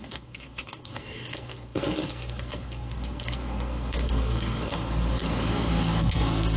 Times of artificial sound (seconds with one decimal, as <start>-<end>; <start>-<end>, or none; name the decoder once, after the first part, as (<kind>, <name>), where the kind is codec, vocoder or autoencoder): 0.0-6.6 (codec, SNAC)